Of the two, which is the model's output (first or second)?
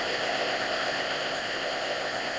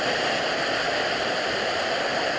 first